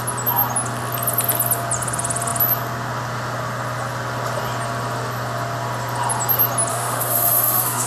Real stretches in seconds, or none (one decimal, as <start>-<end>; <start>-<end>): 0.0-6.7